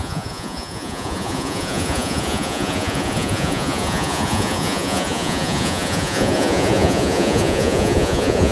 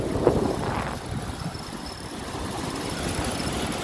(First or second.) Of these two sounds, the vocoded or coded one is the first